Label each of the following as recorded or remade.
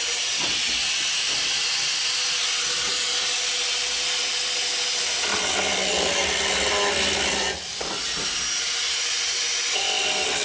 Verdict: recorded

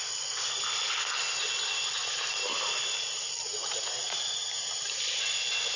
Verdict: recorded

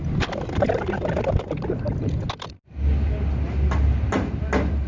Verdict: recorded